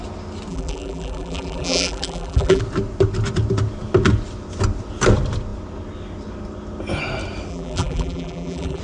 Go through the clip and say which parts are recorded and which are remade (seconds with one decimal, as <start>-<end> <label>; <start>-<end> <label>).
0.0-0.5 recorded; 0.5-2.6 remade; 2.6-7.5 recorded; 7.5-8.8 remade